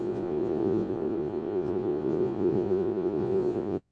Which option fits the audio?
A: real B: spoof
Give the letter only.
B